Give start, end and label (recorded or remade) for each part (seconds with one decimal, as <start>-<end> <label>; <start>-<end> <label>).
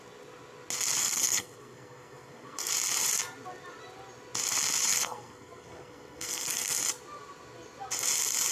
0.0-1.0 recorded; 1.0-2.7 remade; 2.7-4.9 recorded; 4.9-6.8 remade; 6.8-8.5 recorded